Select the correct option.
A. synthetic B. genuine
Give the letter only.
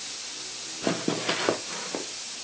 B